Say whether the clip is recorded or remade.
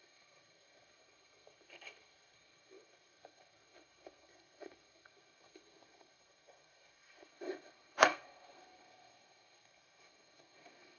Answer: remade